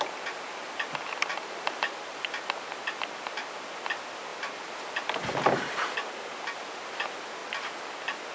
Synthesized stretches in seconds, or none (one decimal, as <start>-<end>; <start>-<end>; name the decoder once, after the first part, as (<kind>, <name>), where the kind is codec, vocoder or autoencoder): 1.3-3.7 (vocoder, BigVGAN v2); 4.3-5.1; 7.4-8.3